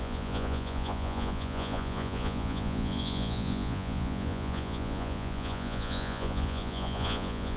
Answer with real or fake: fake